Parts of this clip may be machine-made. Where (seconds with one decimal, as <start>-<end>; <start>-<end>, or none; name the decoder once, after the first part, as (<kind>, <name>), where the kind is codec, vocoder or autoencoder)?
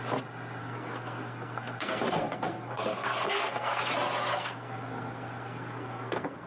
0.6-3.9 (codec, SNAC); 4.3-6.5